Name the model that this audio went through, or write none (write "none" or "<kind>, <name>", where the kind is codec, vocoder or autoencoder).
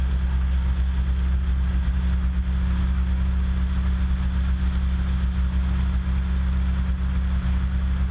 none